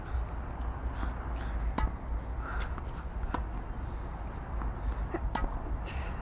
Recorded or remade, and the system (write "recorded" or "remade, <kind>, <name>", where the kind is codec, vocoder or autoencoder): recorded